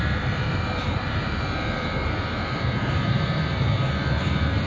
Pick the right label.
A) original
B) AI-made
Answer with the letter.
B